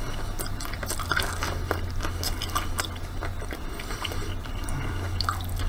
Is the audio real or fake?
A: real